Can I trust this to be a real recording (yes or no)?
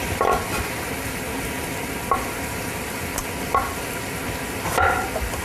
yes